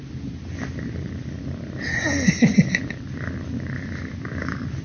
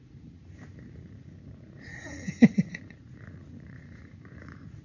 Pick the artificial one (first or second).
second